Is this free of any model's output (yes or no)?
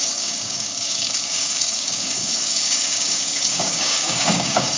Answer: no